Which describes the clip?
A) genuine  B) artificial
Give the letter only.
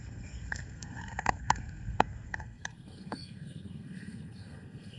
B